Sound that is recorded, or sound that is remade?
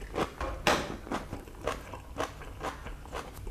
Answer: recorded